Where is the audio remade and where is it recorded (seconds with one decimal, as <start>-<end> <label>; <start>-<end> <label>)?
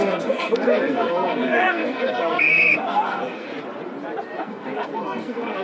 0.0-3.5 remade; 3.5-4.4 recorded; 4.4-5.6 remade